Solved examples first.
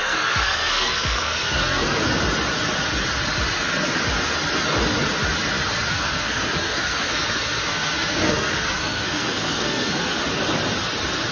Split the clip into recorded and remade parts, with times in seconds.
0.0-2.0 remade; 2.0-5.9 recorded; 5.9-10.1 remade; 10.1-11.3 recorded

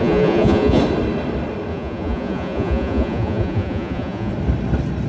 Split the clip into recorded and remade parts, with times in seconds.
0.0-0.8 remade; 0.8-1.7 recorded; 1.7-4.3 remade; 4.3-5.1 recorded

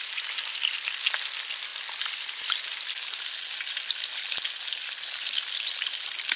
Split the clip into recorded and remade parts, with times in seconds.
0.0-6.4 recorded